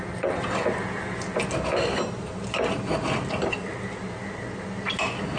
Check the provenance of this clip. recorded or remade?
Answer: recorded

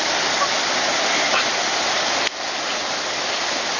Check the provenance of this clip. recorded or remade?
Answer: recorded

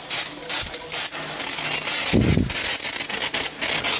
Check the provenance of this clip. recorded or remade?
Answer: recorded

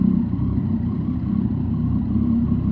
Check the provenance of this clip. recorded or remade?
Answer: remade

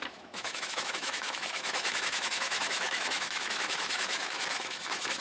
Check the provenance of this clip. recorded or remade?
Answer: remade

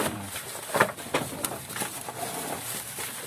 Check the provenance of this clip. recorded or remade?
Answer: recorded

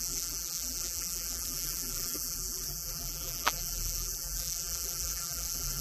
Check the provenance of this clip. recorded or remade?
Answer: remade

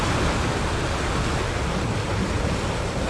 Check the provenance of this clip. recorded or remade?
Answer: recorded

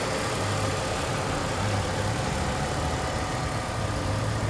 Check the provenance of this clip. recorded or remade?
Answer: recorded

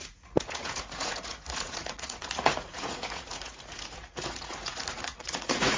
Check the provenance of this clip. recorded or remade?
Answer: remade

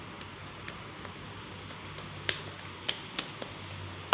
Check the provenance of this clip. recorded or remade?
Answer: recorded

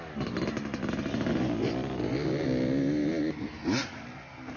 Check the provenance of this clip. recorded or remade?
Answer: recorded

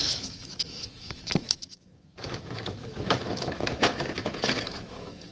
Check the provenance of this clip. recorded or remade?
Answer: remade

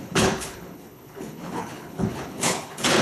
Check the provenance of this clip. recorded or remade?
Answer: remade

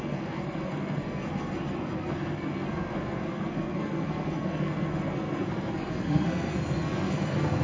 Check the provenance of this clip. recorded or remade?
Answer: remade